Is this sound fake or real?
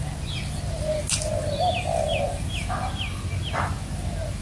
real